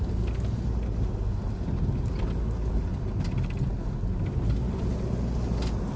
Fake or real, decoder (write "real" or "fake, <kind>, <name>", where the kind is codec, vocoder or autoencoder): real